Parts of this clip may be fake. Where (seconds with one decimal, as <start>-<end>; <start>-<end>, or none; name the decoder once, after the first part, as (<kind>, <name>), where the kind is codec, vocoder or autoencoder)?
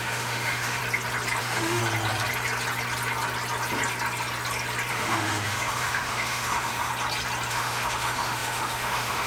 0.0-0.8 (autoencoder, DAC-VAE); 1.4-1.8; 4.9-6.9; 7.5-9.3